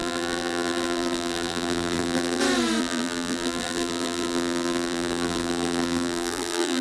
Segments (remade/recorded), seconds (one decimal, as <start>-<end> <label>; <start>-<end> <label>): 0.0-2.4 remade; 2.4-2.8 recorded; 2.8-6.8 remade